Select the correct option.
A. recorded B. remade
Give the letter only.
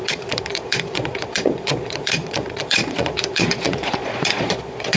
B